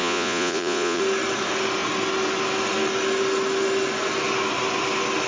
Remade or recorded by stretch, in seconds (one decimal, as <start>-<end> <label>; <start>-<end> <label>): 0.0-1.0 remade; 1.0-5.3 recorded